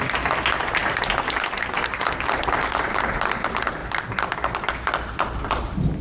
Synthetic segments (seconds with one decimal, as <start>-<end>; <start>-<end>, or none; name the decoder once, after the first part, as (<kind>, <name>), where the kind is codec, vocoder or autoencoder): none